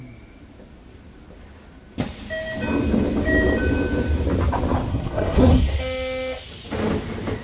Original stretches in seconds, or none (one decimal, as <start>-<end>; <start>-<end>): 0.0-4.9; 5.8-7.4

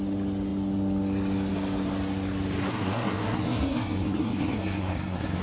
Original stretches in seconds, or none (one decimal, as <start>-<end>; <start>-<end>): 0.0-2.7